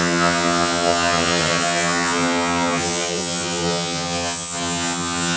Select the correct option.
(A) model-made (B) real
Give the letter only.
A